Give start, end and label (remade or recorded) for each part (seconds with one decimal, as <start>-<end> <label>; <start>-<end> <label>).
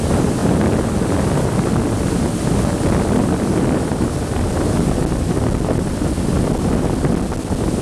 0.0-7.8 recorded